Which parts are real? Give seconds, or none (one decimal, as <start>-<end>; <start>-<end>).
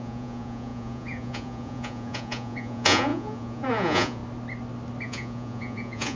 4.2-5.0